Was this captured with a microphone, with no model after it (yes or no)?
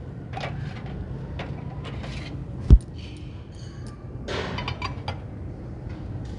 yes